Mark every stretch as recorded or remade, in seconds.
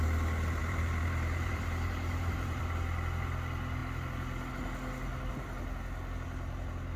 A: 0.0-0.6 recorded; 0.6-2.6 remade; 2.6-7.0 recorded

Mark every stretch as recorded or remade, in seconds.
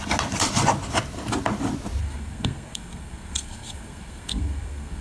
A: 0.0-2.0 recorded; 2.0-5.0 remade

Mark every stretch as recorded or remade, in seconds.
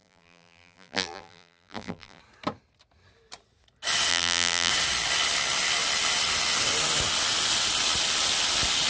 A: 0.0-2.2 remade; 2.2-4.1 recorded; 4.1-4.7 remade; 4.7-8.9 recorded